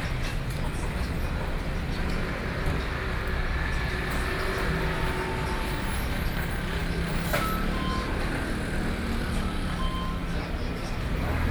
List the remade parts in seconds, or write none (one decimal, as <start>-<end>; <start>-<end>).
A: none